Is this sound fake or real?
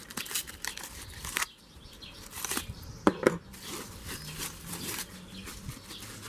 fake